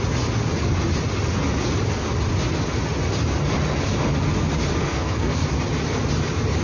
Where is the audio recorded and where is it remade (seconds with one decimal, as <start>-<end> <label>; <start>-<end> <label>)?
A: 0.0-4.8 recorded; 4.8-5.4 remade; 5.4-6.6 recorded